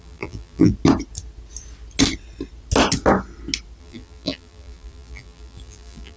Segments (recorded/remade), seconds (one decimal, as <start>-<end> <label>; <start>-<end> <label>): 0.0-0.7 remade; 0.7-3.8 recorded; 3.8-6.2 remade